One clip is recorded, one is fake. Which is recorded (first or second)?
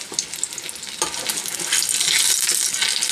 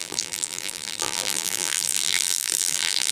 first